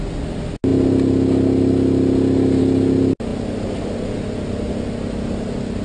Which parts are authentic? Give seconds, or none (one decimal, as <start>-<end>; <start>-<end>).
0.0-5.8